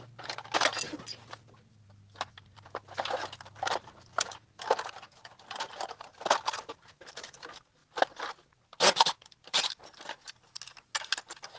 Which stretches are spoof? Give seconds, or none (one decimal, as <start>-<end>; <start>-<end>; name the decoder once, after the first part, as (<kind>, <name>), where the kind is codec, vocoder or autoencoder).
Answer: none